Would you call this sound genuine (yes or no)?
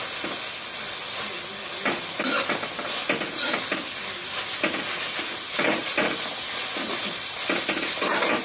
yes